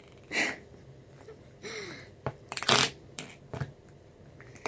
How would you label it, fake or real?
fake